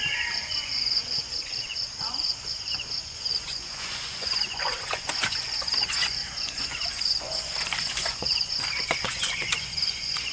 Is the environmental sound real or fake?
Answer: fake